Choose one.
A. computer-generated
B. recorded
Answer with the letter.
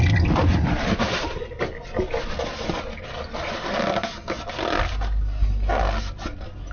B